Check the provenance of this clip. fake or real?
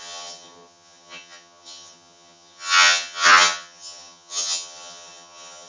fake